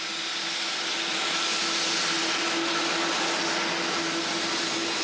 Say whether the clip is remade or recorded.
recorded